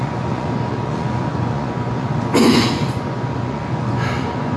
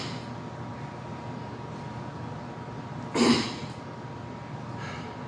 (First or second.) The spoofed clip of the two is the first